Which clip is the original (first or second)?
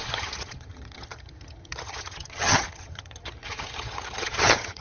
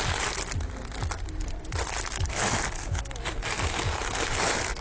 second